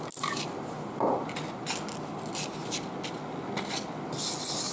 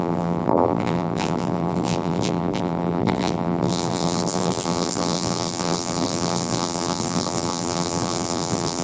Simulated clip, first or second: second